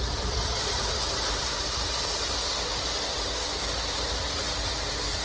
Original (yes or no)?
no